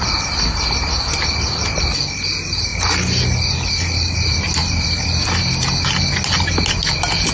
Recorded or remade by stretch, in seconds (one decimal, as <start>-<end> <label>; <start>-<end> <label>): 0.0-7.3 recorded